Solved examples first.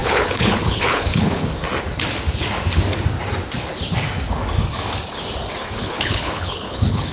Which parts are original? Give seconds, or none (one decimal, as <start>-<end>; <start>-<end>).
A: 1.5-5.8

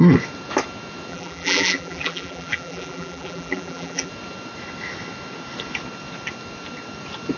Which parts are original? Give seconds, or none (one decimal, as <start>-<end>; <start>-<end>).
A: 0.0-1.1; 4.1-7.4

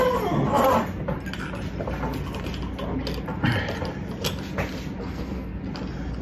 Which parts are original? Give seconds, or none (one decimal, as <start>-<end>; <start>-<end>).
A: 0.0-5.0; 5.6-6.2

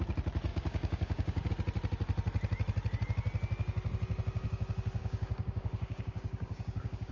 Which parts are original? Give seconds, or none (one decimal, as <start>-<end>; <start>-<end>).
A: 0.0-0.5; 1.5-5.0

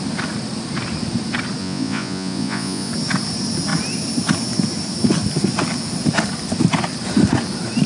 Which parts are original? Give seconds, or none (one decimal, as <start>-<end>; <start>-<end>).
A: 0.0-1.6; 2.9-7.9

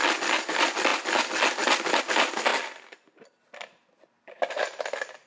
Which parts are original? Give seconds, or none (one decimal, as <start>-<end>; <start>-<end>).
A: 0.0-5.3

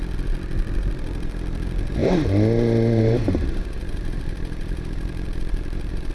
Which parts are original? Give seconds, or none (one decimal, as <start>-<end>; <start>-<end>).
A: 0.0-2.0